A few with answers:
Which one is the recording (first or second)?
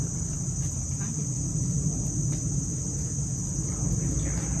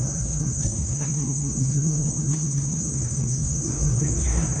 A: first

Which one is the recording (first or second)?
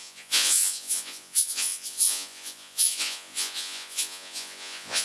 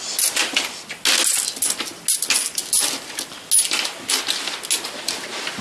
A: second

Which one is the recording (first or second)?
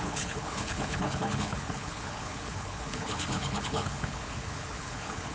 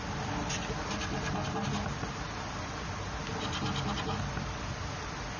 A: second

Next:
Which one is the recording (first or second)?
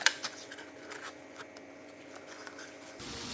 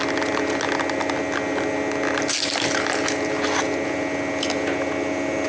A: second